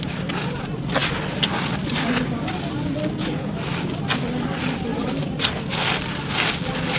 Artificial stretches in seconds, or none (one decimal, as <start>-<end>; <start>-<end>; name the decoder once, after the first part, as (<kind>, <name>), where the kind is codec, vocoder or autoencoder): 4.9-5.5 (vocoder, BigVGAN v2)